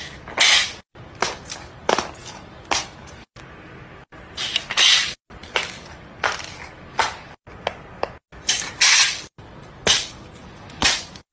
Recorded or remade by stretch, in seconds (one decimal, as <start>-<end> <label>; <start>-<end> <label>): 0.0-10.4 recorded; 10.4-11.3 remade